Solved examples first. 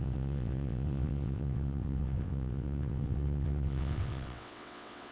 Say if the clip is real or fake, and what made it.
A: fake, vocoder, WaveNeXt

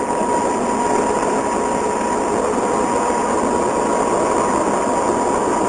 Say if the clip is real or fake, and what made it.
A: real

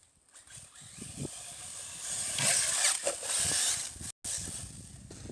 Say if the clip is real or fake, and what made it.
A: real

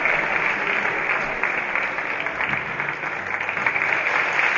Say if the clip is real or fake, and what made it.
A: real